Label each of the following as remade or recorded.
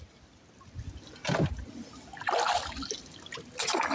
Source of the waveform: recorded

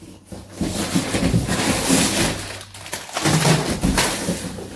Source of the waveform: recorded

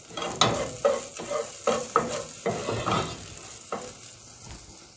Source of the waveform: recorded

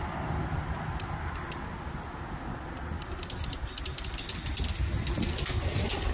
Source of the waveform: recorded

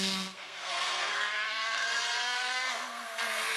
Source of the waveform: remade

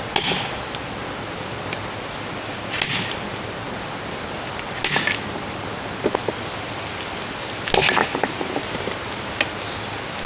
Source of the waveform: recorded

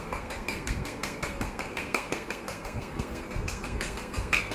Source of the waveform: remade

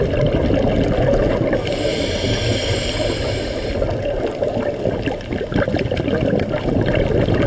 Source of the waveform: recorded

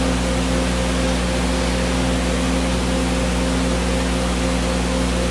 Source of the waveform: recorded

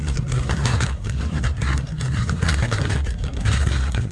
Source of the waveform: remade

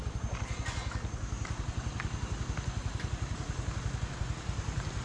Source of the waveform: recorded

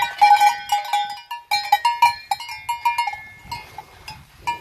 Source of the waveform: recorded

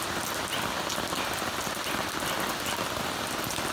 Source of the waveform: recorded